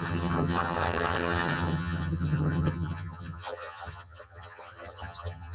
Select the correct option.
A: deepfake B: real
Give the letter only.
A